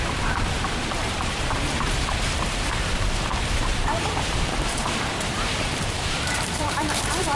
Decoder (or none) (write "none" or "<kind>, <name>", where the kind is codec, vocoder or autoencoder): vocoder, BigVGAN v2